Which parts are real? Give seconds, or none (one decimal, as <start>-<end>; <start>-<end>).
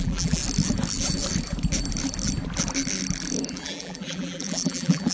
0.4-3.5